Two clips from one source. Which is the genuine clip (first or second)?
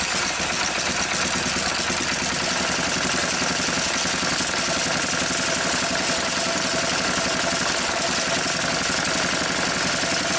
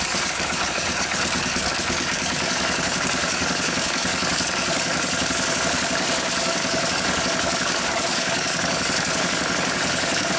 first